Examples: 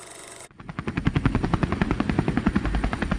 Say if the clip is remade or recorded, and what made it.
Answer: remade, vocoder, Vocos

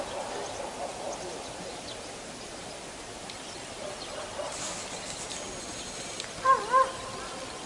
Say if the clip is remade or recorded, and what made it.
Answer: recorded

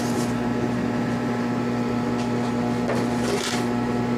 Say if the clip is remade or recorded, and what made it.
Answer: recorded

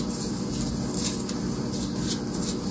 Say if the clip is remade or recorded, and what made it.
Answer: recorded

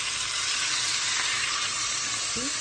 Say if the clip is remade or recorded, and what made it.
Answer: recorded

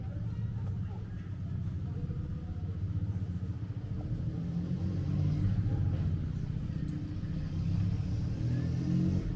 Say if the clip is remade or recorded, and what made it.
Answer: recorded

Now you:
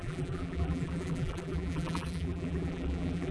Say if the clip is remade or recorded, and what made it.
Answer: remade, vocoder, BigVGAN v2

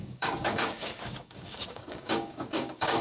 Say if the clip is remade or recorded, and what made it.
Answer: remade, codec, DAC